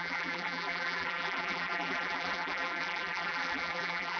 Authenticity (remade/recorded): remade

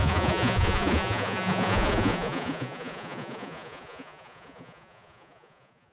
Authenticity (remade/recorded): remade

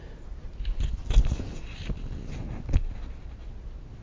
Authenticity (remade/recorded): recorded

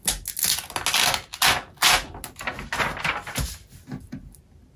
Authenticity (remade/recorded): recorded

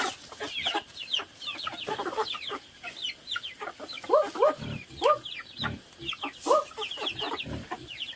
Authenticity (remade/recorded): recorded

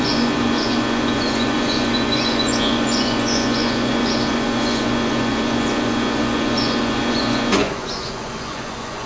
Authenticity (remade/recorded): remade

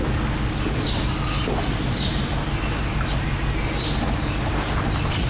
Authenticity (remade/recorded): recorded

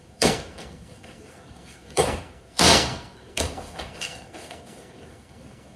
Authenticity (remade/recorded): remade